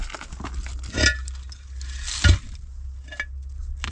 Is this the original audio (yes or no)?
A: yes